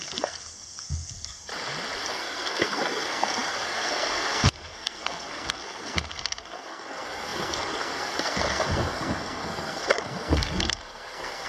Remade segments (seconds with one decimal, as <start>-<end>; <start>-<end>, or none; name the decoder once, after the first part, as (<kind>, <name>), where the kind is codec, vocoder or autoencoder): 0.0-1.5 (codec, SNAC); 2.1-11.5